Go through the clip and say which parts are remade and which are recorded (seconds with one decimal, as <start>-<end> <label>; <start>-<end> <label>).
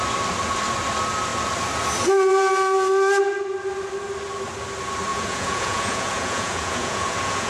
0.0-5.1 recorded; 5.1-7.5 remade